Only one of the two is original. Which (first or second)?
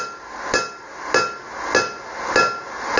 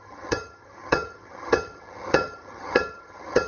first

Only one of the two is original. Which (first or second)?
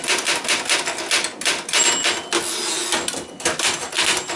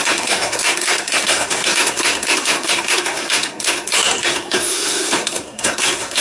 first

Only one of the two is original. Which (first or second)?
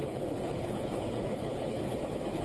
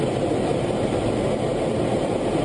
second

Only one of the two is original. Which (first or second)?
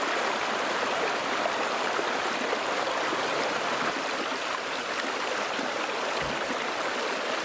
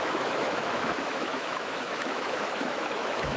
first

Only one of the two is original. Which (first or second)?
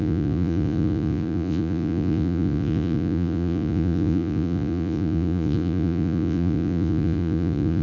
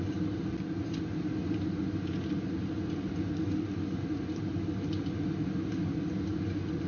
second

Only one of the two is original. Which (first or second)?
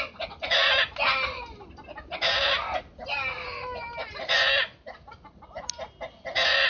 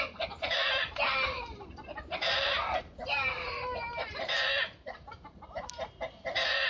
first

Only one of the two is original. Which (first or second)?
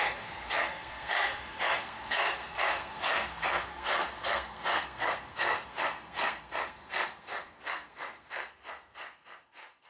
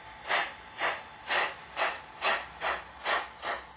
second